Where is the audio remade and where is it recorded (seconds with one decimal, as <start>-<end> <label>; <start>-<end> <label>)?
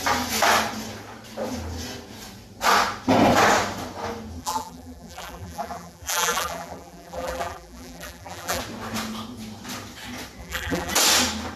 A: 0.0-4.4 recorded; 4.4-8.6 remade; 8.6-10.4 recorded; 10.4-10.9 remade; 10.9-11.6 recorded